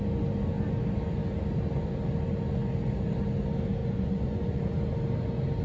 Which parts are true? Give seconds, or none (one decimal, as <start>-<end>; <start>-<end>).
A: 0.0-3.8; 4.6-5.6